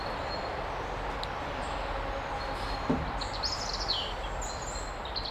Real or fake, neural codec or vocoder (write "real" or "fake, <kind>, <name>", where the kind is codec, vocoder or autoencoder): real